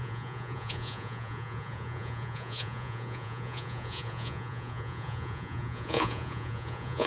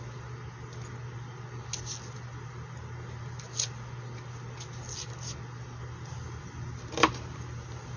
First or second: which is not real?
first